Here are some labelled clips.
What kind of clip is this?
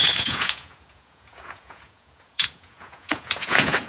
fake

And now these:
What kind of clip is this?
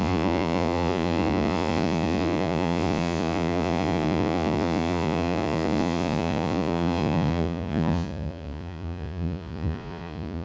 fake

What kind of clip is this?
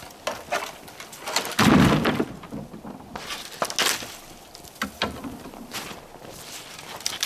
real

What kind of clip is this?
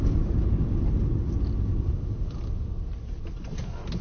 real